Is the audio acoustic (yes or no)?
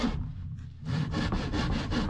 yes